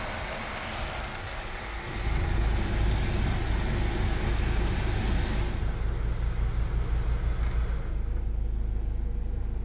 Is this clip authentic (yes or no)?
yes